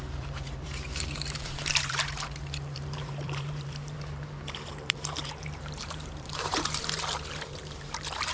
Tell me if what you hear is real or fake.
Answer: fake